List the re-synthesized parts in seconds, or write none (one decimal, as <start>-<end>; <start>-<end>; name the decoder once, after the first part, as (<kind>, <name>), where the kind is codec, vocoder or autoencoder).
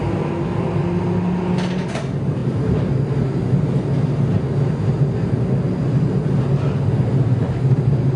none